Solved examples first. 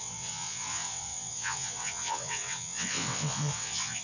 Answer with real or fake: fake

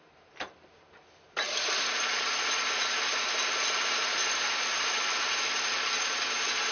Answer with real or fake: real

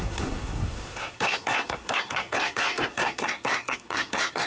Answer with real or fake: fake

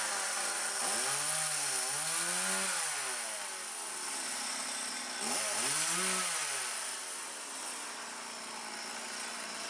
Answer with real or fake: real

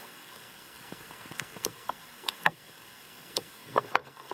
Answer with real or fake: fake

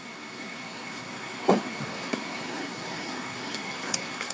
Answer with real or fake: fake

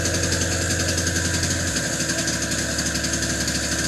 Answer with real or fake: real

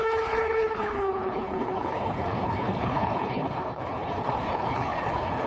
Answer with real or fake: fake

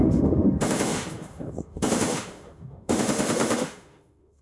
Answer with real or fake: fake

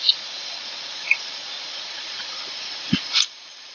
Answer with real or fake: fake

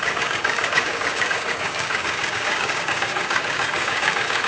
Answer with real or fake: fake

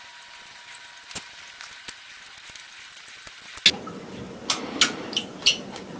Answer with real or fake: real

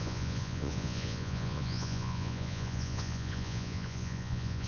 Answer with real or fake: fake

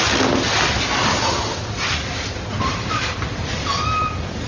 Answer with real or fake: real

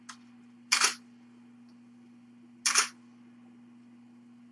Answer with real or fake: real